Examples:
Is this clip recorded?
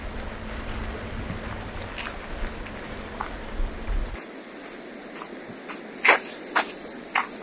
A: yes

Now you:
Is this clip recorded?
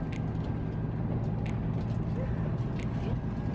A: yes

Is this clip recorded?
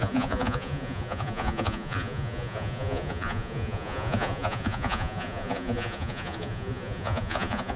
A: no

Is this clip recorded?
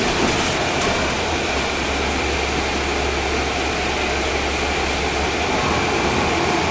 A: yes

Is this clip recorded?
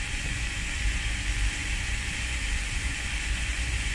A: no